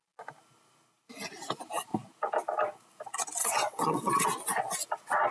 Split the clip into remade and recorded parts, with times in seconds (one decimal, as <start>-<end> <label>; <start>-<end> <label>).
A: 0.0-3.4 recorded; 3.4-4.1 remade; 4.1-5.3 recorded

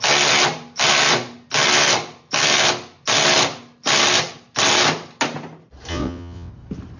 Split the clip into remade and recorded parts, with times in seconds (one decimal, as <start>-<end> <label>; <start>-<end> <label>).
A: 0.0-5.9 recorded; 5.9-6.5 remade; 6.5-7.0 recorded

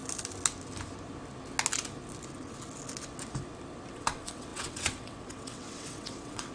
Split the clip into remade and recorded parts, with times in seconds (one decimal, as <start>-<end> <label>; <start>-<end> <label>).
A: 0.0-3.9 recorded; 3.9-6.5 remade

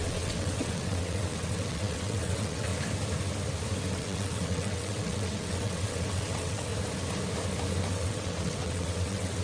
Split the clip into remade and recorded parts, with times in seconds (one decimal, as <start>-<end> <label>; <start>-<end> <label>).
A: 0.0-2.7 remade; 2.7-3.9 recorded; 3.9-6.7 remade; 6.7-7.9 recorded; 7.9-9.4 remade

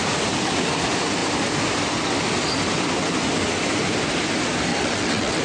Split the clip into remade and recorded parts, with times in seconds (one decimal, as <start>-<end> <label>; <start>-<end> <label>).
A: 0.0-4.7 recorded; 4.7-5.4 remade